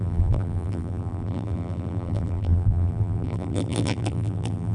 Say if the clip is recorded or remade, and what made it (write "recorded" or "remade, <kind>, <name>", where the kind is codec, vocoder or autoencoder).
remade, vocoder, BigVGAN v2